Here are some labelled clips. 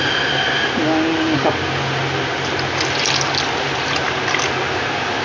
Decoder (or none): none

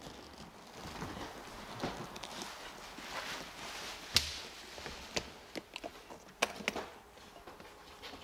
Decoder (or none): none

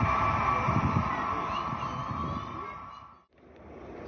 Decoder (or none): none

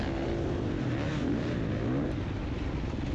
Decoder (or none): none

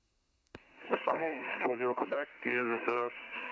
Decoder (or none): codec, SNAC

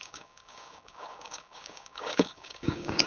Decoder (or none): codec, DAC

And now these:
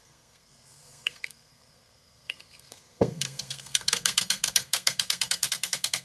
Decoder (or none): codec, SNAC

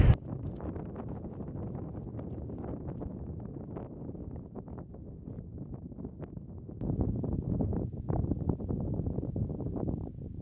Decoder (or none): none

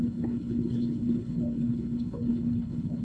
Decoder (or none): codec, HILCodec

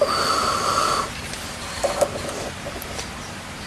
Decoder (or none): none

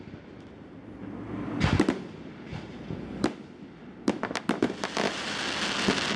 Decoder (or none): none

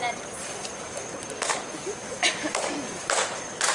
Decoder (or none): none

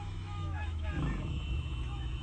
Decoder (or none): autoencoder, DAC-VAE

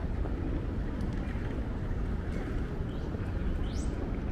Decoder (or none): none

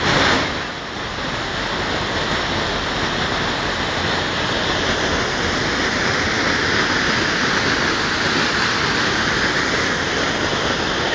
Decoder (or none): none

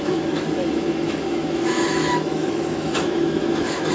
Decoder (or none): autoencoder, DAC-VAE